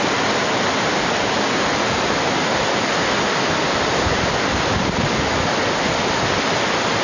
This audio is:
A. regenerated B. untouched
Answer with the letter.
B